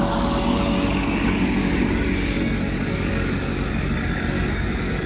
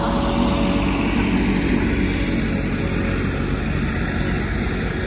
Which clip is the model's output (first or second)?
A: first